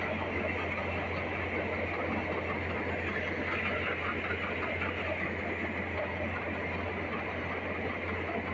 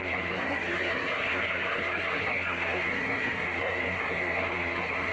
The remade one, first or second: second